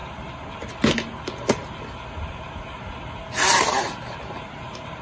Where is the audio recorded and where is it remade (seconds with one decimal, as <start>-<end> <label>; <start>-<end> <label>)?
0.0-5.0 recorded